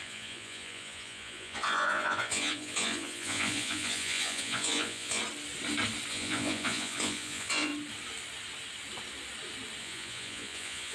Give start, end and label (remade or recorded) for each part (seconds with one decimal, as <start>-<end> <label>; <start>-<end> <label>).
0.0-5.2 remade; 5.2-6.1 recorded; 6.1-7.7 remade; 7.7-9.8 recorded; 9.8-10.9 remade